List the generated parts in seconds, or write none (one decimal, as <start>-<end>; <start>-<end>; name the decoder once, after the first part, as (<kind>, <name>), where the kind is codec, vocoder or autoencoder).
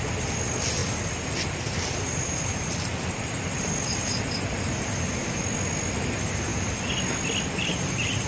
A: none